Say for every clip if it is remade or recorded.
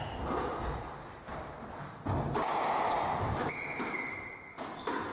recorded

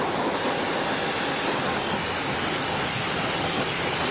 recorded